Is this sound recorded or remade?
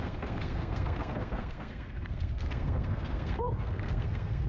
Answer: remade